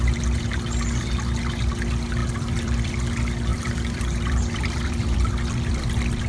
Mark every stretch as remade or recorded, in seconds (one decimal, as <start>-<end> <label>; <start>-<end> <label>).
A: 0.0-2.2 recorded; 2.2-2.9 remade; 2.9-3.5 recorded; 3.5-6.3 remade